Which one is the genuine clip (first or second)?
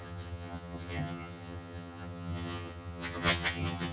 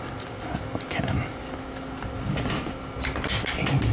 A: second